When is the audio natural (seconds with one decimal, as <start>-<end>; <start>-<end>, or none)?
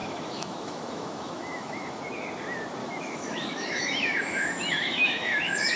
2.0-2.8